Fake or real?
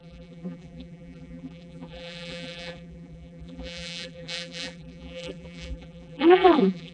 fake